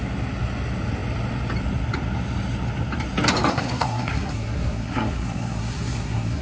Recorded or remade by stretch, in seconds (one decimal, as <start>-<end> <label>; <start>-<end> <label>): 0.0-3.5 recorded; 3.5-6.4 remade